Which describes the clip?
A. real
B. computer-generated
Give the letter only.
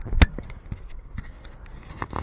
A